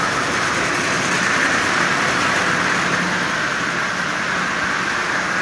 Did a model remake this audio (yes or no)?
no